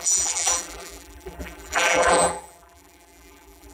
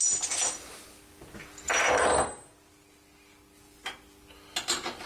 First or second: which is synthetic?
first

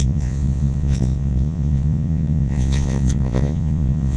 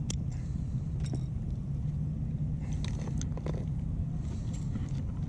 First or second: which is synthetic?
first